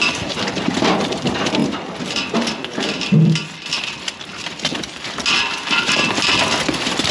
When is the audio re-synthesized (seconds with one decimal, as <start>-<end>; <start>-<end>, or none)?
0.0-1.6; 5.4-6.0